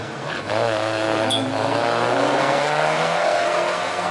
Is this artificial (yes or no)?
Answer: yes